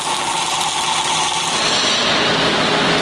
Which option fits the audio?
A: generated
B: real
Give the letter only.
B